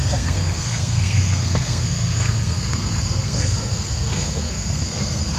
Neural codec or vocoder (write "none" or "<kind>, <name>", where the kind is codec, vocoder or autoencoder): codec, SNAC